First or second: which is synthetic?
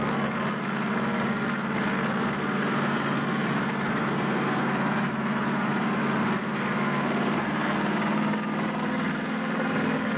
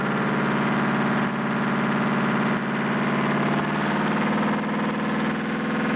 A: first